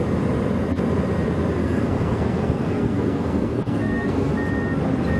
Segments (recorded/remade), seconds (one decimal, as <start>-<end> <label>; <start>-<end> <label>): 0.0-1.6 recorded; 1.6-4.3 remade; 4.3-5.2 recorded